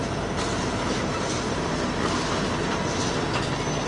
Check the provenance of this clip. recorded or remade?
recorded